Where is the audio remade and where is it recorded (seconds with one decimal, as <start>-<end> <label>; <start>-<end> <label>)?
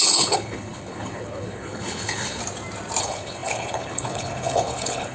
0.0-2.4 remade; 2.4-3.0 recorded; 3.0-5.1 remade